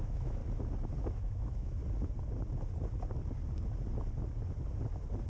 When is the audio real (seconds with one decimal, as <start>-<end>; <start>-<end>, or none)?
0.4-1.0; 1.8-5.3

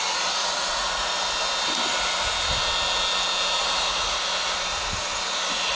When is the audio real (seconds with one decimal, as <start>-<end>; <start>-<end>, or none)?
0.0-0.4; 1.1-3.6; 4.2-5.7

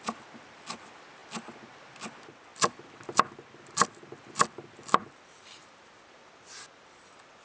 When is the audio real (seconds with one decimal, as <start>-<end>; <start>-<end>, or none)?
0.0-7.4